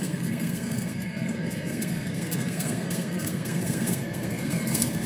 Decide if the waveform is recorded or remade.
remade